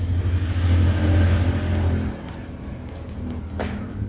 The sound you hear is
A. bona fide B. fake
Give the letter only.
A